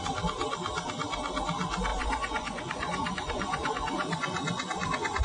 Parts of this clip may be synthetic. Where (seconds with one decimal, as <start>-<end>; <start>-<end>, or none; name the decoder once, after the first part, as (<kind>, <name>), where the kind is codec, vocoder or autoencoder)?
1.9-5.2 (vocoder, Vocos)